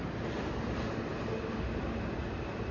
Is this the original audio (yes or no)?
yes